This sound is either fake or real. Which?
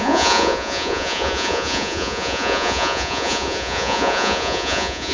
fake